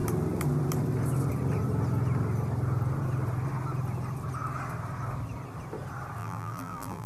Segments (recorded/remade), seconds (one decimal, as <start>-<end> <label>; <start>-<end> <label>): 0.0-6.2 recorded; 6.2-7.1 remade